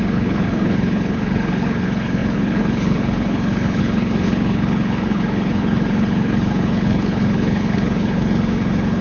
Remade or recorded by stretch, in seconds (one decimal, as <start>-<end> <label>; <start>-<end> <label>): 0.0-9.0 remade